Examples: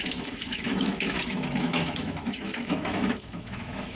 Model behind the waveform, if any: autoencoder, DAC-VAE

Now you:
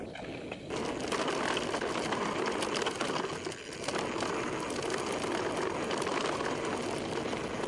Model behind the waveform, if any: none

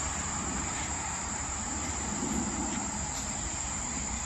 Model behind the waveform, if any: vocoder, BigVGAN v2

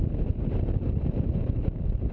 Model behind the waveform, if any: none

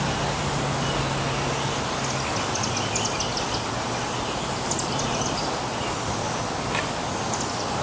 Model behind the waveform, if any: none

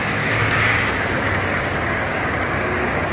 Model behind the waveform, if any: codec, DAC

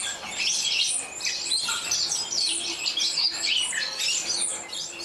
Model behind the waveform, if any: vocoder, BigVGAN v2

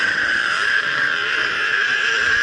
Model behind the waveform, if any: vocoder, BigVGAN v2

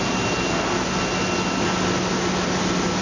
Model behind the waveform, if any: none